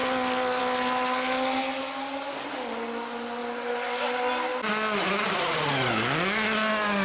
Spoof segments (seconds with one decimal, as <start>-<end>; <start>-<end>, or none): none